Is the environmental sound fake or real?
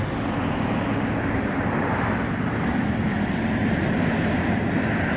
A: fake